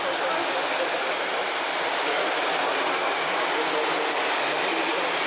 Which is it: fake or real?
real